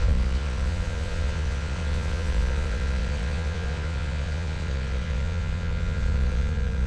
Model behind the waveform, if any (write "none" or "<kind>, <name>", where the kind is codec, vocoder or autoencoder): vocoder, Vocos